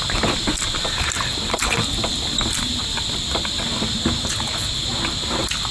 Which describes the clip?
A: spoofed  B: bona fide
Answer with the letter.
B